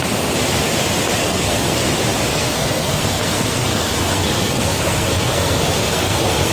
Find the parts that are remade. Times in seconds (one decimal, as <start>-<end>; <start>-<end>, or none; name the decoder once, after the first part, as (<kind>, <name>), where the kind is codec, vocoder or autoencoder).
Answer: 1.2-1.9 (codec, SNAC); 2.3-6.5